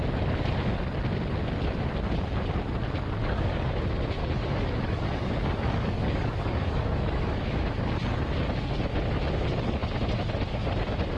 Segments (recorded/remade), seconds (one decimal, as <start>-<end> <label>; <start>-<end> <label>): 0.0-3.2 recorded; 3.2-3.7 remade; 3.7-4.2 recorded; 4.2-7.6 remade; 7.6-11.2 recorded